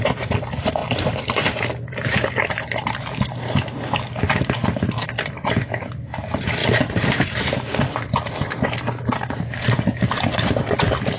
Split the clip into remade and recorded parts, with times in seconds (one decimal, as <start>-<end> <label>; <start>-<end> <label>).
0.0-11.2 recorded